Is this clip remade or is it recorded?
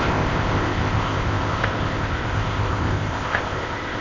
remade